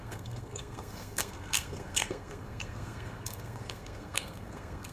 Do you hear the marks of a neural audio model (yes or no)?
yes